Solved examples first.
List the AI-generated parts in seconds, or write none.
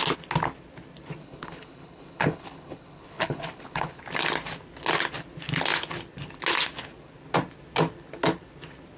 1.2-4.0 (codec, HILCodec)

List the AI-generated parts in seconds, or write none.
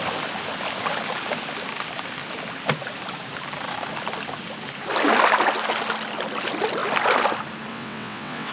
7.7-8.5 (vocoder, WaveNeXt)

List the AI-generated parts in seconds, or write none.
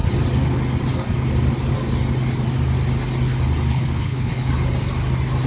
3.7-4.5 (codec, HILCodec)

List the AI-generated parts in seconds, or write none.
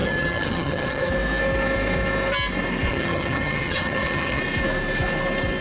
0.0-1.1 (vocoder, HiFi-GAN); 2.9-4.4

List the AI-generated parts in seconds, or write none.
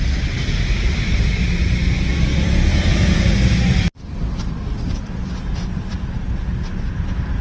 2.7-3.3 (vocoder, Vocos)